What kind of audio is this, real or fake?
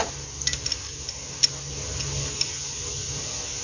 real